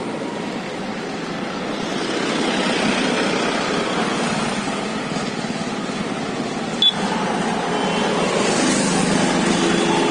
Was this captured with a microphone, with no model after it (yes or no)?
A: yes